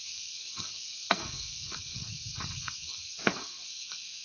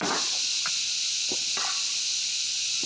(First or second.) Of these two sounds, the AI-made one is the first